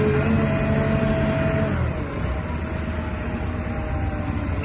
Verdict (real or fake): real